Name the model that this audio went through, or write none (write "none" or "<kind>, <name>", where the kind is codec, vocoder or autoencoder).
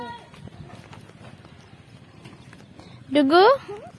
none